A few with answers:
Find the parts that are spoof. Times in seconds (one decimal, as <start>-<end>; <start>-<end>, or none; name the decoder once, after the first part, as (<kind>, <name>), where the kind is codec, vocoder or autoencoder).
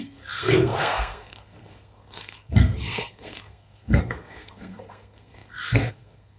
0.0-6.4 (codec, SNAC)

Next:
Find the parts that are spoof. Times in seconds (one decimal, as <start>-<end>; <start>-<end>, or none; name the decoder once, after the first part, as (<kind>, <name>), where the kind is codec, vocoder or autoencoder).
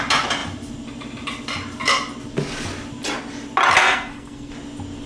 3.8-4.5 (codec, SNAC)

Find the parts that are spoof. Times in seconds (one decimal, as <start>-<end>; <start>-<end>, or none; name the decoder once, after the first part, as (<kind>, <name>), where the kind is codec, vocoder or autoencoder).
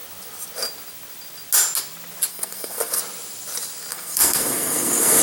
2.3-3.0 (codec, SNAC); 3.9-5.2